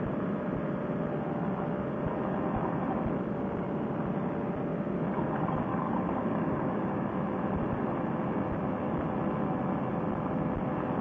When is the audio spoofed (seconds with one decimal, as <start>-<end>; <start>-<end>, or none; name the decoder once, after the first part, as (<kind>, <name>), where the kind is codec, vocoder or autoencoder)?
5.7-7.1 (codec, DAC)